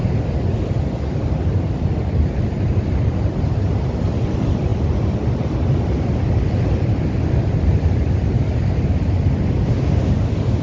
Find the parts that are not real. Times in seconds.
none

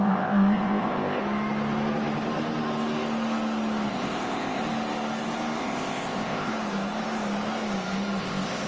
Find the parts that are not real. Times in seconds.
0.0-1.2 (codec, ZipCodec); 3.9-4.6; 5.6-6.5; 8.2-8.7

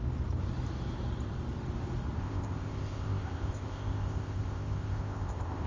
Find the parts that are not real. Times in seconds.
2.2-5.7 (codec, ZipCodec)

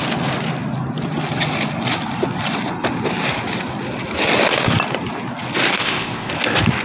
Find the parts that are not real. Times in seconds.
5.8-6.3 (codec, ZipCodec)

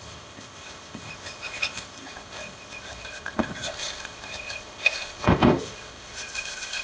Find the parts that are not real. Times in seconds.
0.0-6.8 (codec, ZipCodec)

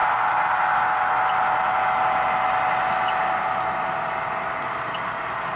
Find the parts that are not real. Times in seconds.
none